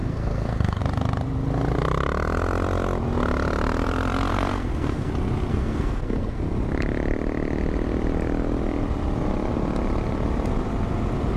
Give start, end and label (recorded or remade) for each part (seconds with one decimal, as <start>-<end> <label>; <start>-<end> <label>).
0.0-0.8 remade; 0.8-4.3 recorded; 4.3-5.1 remade; 5.1-5.5 recorded; 5.5-6.4 remade; 6.4-11.4 recorded